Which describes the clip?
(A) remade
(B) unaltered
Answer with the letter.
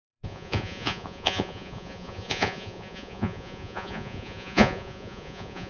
A